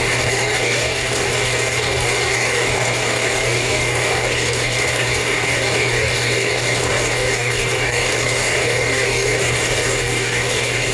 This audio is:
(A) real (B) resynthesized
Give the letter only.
B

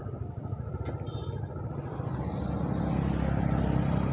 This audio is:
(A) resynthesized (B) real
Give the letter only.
B